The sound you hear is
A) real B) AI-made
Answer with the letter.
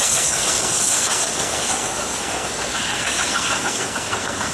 B